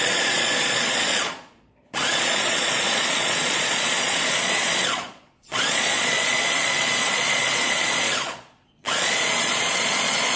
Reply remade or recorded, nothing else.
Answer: remade